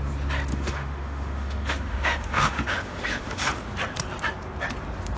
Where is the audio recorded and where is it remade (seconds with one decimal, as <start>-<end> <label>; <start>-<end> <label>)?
0.0-0.5 recorded; 0.5-3.6 remade; 3.6-5.2 recorded